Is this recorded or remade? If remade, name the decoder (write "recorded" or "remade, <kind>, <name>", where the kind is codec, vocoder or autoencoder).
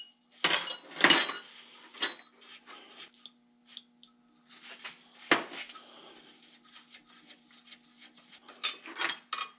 recorded